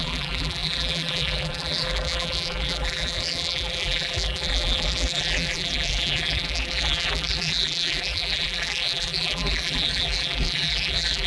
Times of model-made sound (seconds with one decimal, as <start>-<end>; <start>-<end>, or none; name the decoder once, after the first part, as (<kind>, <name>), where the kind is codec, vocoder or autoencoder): 0.0-11.3 (vocoder, BigVGAN v2)